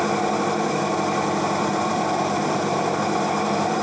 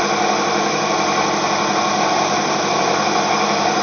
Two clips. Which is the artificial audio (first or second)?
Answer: first